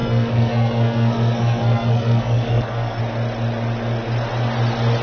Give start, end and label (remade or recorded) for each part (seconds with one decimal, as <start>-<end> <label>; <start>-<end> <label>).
0.0-3.0 remade; 3.0-5.0 recorded